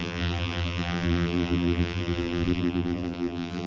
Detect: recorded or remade remade